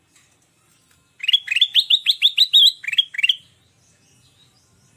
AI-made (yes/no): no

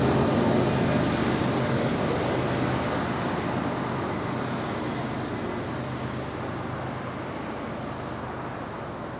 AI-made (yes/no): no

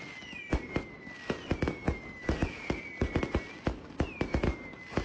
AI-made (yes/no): no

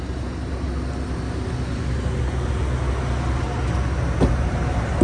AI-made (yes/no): no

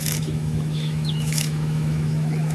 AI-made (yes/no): yes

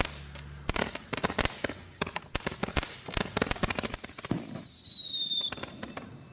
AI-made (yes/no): no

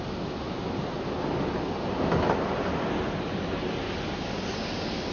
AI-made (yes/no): no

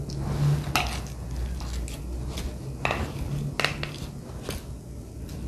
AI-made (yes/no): no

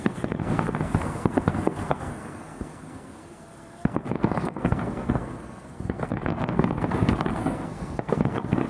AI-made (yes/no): yes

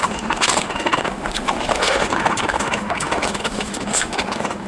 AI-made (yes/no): yes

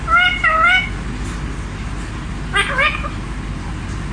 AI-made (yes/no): no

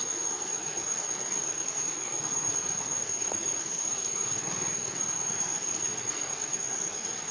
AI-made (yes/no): yes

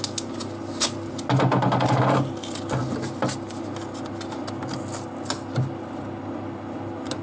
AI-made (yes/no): no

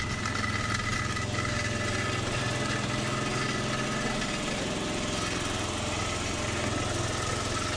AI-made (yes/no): no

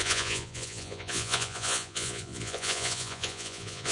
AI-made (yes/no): yes